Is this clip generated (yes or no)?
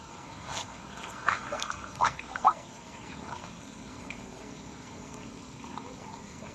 yes